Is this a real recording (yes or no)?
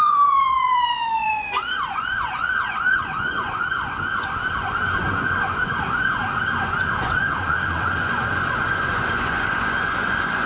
no